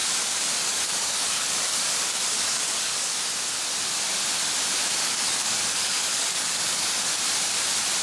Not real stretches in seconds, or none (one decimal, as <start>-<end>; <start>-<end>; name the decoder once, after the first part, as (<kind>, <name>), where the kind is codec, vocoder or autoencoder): 0.0-3.3 (codec, DAC); 5.0-7.2